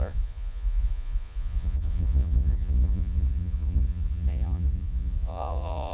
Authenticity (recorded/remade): remade